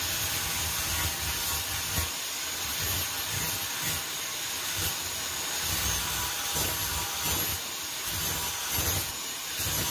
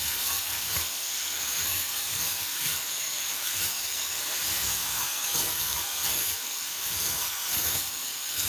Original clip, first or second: first